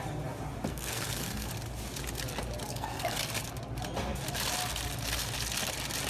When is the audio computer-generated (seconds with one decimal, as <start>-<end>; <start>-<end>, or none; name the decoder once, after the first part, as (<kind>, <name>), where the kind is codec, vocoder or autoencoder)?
0.7-1.5 (codec, SNAC); 2.7-3.2

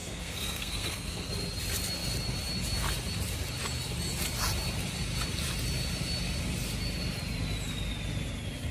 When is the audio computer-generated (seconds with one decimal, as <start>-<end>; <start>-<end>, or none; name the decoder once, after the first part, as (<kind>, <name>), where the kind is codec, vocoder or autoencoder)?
0.0-1.3 (codec, SNAC)

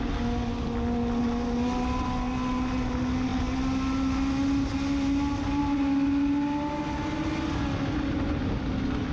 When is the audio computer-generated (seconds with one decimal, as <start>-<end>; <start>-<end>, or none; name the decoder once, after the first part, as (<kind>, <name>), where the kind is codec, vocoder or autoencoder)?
none

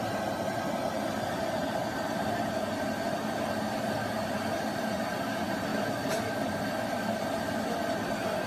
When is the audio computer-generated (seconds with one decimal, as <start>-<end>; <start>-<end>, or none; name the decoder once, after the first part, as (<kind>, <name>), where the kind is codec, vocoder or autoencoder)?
none

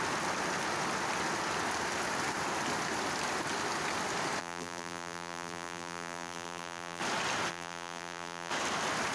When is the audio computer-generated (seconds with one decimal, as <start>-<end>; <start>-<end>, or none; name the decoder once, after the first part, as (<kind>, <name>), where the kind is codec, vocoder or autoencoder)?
4.4-7.0 (vocoder, BigVGAN v2); 7.5-8.5

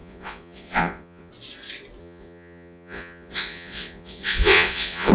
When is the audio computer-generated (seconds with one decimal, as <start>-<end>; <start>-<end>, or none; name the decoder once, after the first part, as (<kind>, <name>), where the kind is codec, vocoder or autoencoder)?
0.0-1.3 (vocoder, Vocos); 2.0-5.1

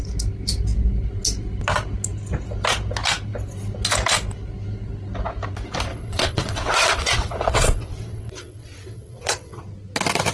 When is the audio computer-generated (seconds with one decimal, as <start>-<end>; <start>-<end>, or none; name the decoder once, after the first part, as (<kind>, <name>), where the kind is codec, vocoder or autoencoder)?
5.9-9.6 (vocoder, WaveNeXt)